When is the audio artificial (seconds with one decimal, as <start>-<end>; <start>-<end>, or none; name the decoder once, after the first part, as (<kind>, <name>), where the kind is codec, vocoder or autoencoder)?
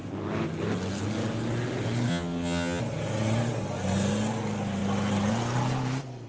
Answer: 2.1-2.8 (vocoder, HiFi-GAN)